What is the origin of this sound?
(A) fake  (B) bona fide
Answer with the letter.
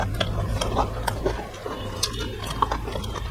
B